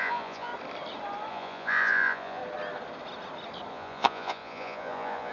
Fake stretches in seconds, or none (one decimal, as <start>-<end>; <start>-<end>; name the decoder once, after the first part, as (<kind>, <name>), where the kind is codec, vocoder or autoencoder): 0.0-0.5 (vocoder, Vocos); 1.3-2.4; 3.7-5.3